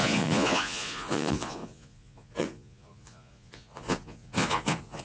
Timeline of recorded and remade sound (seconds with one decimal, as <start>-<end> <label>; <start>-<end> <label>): 0.0-5.0 remade

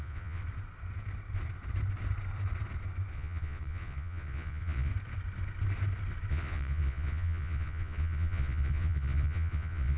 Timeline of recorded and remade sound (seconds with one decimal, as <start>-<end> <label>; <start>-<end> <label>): 0.0-0.4 remade; 0.4-3.1 recorded; 3.1-4.9 remade; 4.9-6.3 recorded; 6.3-10.0 remade